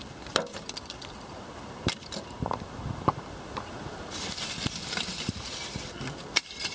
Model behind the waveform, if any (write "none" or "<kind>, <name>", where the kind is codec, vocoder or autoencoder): vocoder, BigVGAN v2